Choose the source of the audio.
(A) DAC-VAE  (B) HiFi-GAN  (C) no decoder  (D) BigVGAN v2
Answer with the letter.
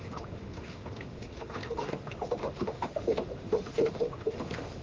A